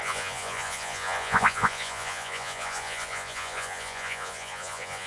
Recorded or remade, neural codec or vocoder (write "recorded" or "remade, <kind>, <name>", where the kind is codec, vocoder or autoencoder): remade, vocoder, Vocos